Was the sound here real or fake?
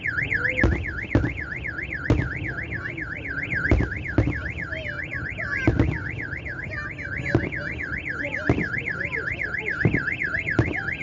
real